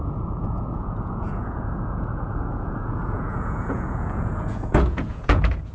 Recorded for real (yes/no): no